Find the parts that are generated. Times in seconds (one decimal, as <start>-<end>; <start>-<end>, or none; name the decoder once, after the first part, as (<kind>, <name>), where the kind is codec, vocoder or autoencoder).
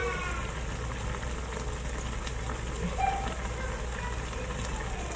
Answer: none